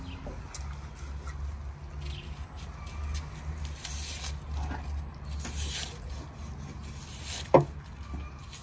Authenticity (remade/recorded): recorded